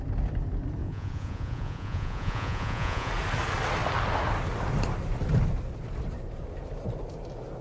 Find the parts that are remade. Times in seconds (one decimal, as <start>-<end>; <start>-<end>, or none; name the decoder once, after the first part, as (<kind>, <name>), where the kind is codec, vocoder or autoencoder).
0.8-3.1 (vocoder, Vocos)